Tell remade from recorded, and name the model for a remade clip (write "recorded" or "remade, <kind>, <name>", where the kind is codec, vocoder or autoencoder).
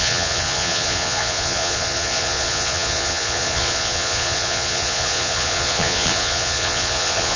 remade, vocoder, Vocos